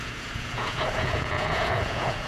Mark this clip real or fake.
fake